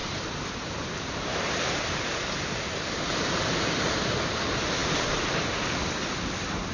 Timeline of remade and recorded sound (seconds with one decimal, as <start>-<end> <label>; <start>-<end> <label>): 0.0-4.0 remade; 4.0-4.8 recorded; 4.8-5.4 remade; 5.4-6.7 recorded